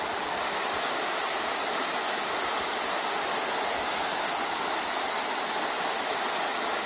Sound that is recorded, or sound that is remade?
recorded